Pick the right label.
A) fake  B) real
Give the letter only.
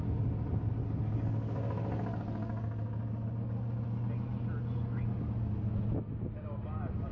B